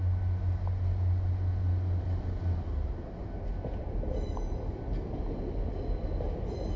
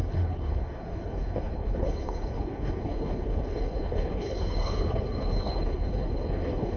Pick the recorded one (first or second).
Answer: first